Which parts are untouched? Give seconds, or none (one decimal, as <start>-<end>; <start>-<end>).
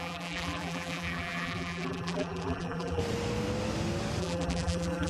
3.0-4.2